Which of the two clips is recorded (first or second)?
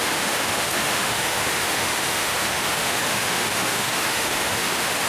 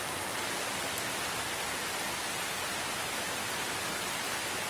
second